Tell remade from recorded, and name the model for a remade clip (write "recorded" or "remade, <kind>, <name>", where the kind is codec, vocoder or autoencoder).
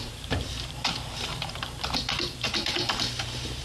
remade, vocoder, BigVGAN v2